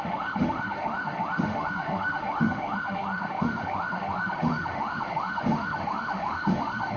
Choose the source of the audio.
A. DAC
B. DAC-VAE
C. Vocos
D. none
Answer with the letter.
B